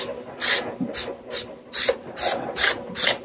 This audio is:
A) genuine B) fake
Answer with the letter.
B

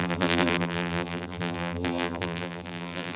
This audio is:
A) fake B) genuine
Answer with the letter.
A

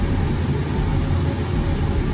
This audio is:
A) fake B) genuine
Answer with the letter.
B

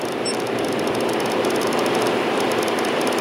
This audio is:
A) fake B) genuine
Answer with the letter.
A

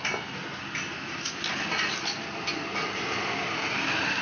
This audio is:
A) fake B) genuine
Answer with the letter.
A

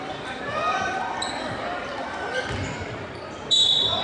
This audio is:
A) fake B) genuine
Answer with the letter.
A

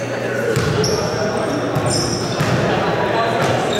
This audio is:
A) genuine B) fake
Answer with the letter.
A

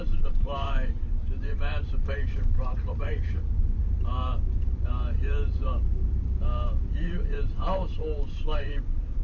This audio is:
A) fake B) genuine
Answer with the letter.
A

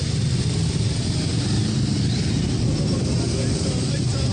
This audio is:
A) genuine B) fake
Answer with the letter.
A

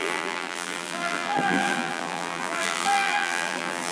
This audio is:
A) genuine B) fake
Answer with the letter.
B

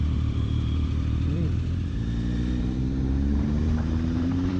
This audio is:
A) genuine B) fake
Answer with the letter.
B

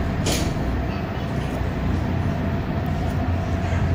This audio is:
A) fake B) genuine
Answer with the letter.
B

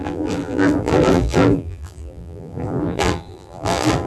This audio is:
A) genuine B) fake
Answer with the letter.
B